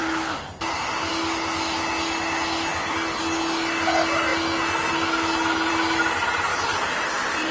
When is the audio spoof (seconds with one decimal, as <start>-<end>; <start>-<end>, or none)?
6.5-7.5